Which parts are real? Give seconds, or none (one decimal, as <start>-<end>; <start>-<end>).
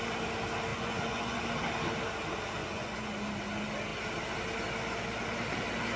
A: 0.0-0.7; 1.4-2.6; 3.1-6.0